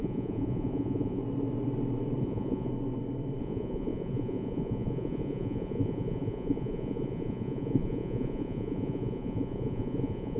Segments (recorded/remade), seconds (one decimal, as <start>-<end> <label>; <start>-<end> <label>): 0.0-1.2 remade; 1.2-2.2 recorded; 2.2-2.7 remade; 2.7-3.4 recorded; 3.4-10.4 remade